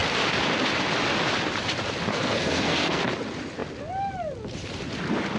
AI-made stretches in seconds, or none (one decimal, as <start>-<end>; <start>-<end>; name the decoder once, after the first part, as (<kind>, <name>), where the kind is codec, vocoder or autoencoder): 2.1-3.0 (codec, SNAC)

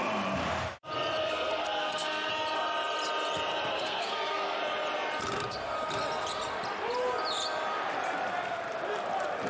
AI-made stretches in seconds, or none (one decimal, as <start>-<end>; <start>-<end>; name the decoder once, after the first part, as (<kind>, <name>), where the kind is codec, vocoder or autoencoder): 1.2-2.3 (codec, SNAC); 3.7-4.6

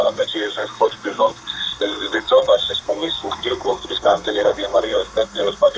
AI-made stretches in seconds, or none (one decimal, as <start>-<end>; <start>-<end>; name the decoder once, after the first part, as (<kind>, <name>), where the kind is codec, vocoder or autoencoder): 0.0-5.8 (codec, SNAC)

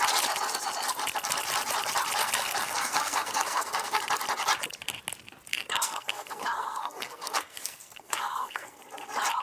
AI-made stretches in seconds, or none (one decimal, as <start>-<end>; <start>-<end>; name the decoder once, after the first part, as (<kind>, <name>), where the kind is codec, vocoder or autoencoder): 2.2-4.0 (codec, SNAC); 5.5-8.8

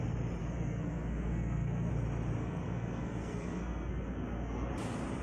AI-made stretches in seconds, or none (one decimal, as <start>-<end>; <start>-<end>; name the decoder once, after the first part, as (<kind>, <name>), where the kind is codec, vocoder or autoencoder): 0.4-1.9 (codec, SNAC); 2.4-4.7

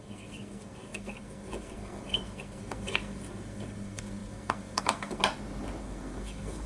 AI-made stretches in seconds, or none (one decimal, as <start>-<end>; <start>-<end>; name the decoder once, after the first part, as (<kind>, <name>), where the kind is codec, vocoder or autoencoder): 0.0-5.2 (codec, SNAC); 5.8-6.7

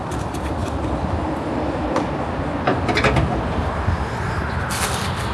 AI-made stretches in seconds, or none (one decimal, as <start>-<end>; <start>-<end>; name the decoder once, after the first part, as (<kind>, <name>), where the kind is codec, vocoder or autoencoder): none